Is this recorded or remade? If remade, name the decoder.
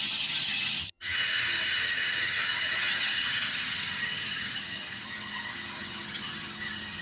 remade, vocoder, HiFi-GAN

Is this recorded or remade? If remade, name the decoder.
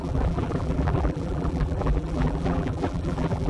remade, vocoder, BigVGAN v2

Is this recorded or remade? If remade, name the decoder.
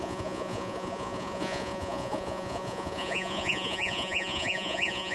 remade, vocoder, Vocos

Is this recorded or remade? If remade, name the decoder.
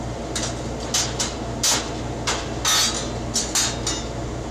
recorded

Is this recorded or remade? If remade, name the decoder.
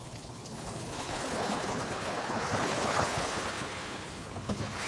remade, codec, HILCodec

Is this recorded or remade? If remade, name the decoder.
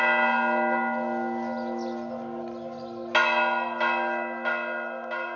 recorded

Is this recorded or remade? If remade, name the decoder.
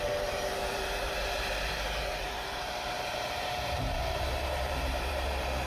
remade, vocoder, BigVGAN v2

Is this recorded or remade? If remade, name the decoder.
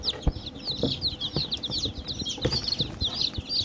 recorded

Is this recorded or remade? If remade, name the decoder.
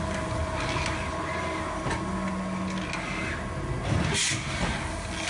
recorded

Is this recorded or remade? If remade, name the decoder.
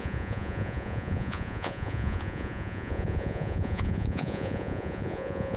remade, vocoder, Vocos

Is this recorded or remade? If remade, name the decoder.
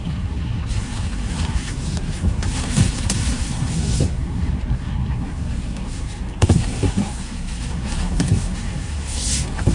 remade, codec, SNAC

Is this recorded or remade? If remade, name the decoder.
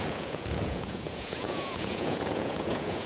remade, vocoder, Vocos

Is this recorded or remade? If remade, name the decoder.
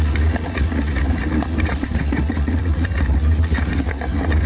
remade, vocoder, Vocos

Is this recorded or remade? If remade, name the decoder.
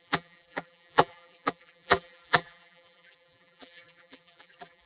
remade, vocoder, BigVGAN v2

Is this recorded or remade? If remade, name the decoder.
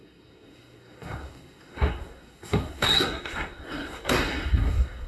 remade, codec, SNAC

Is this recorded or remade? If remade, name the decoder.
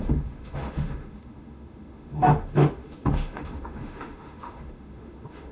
remade, autoencoder, DAC-VAE